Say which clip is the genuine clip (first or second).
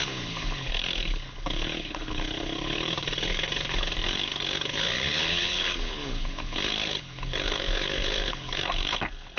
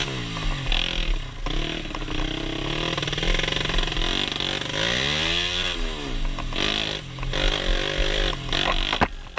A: second